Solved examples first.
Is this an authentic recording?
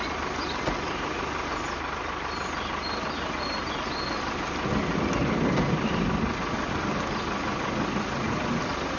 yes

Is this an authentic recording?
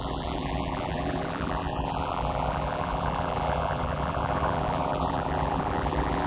no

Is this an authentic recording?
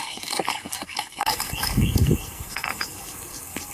no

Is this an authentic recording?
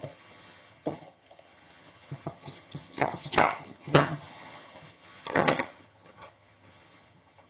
no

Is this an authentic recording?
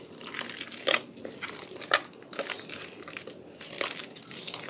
yes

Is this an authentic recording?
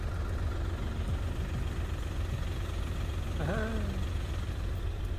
yes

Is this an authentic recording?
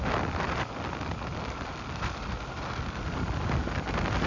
yes